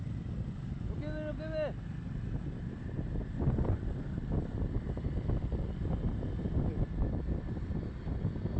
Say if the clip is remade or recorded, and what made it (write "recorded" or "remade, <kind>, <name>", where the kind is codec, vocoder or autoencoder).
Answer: recorded